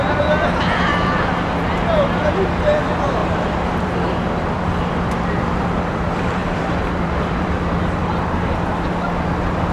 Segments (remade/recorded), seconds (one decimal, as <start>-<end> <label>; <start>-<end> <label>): 0.0-3.2 recorded; 3.2-5.3 remade; 5.3-6.4 recorded; 6.4-8.0 remade; 8.0-9.7 recorded